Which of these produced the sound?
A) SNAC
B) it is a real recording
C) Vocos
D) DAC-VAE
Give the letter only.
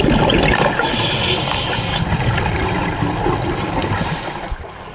B